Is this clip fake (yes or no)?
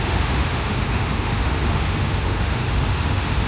yes